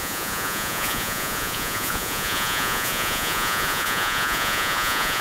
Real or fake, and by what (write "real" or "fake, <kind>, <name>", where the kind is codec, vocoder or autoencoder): fake, vocoder, Vocos